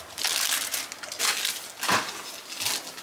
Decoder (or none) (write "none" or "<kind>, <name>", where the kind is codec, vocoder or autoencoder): none